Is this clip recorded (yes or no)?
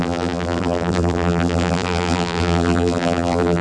no